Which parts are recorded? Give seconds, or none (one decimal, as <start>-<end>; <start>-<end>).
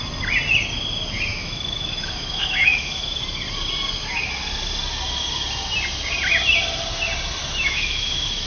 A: 0.0-1.3; 3.2-7.4